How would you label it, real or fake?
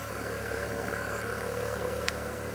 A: fake